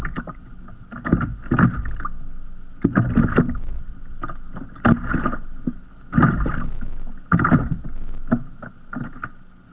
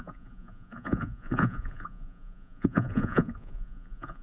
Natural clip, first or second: first